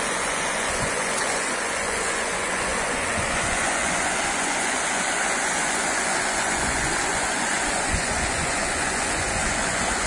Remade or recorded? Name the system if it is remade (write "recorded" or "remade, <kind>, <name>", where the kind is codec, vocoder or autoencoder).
remade, vocoder, Vocos